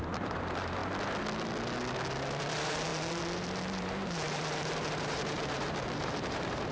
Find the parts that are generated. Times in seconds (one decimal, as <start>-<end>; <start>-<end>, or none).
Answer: 0.0-0.8; 2.5-6.7